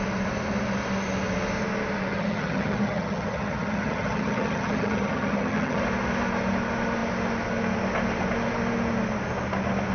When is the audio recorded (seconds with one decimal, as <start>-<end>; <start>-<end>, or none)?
0.0-2.1; 5.8-9.9